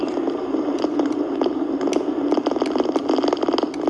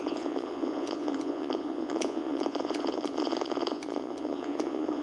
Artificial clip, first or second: second